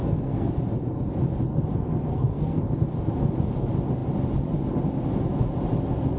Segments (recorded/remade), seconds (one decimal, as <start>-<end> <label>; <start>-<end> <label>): 0.0-0.5 remade; 0.5-2.1 recorded; 2.1-2.6 remade; 2.6-6.2 recorded